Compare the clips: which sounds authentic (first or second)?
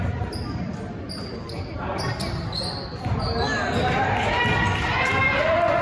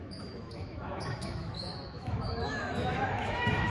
first